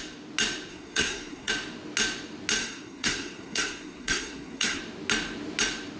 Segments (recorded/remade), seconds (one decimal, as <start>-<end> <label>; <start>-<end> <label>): 0.0-0.7 recorded; 0.7-1.5 remade; 1.5-2.6 recorded; 2.6-4.8 remade; 4.8-6.0 recorded